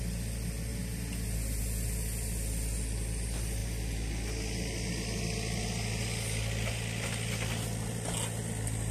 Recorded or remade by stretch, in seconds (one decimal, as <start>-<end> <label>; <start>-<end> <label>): 0.0-8.9 recorded